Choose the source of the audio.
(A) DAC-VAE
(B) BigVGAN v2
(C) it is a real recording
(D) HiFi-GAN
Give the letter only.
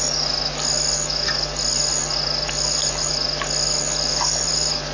C